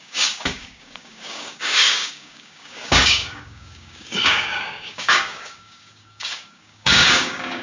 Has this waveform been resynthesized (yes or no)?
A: yes